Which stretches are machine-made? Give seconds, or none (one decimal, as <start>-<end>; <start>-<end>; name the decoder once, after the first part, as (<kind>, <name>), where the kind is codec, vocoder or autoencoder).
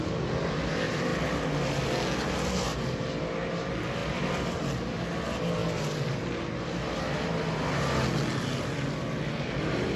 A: 5.6-6.2 (vocoder, BigVGAN v2)